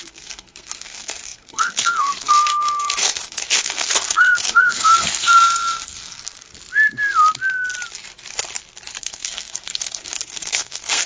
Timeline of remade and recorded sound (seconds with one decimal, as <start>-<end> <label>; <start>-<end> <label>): 0.0-6.5 remade; 6.5-9.0 recorded; 9.0-11.1 remade